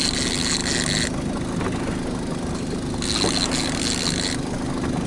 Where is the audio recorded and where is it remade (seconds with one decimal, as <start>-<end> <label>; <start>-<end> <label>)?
0.0-5.1 recorded